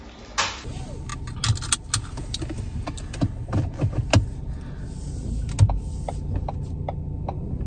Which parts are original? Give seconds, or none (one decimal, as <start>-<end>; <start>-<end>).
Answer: 0.0-7.7